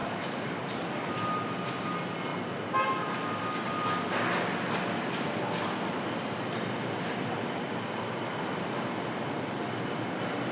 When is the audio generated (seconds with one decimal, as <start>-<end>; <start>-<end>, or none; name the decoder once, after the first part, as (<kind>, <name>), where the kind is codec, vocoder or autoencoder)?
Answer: 0.0-1.1 (codec, DAC)